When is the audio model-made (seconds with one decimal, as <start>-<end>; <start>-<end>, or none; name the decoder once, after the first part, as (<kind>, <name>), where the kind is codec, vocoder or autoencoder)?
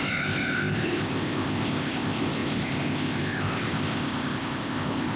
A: 0.0-5.2 (codec, ZipCodec)